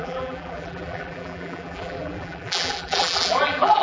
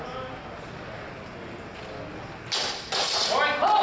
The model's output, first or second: first